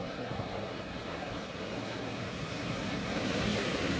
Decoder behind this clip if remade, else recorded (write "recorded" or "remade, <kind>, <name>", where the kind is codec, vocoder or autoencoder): remade, codec, SNAC